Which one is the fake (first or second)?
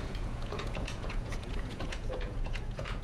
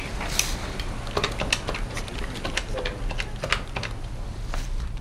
first